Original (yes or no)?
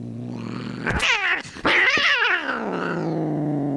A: yes